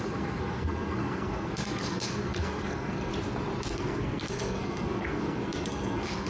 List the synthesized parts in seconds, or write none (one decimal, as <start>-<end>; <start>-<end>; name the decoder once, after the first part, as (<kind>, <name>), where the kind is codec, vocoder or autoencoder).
0.0-3.1 (codec, SNAC); 3.7-6.3